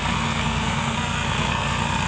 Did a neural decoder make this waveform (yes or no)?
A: yes